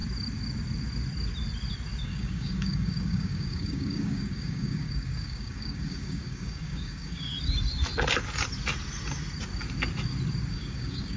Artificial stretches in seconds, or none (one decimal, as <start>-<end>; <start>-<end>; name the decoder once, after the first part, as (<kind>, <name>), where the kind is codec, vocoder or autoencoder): 2.0-7.3 (codec, DAC); 10.5-11.2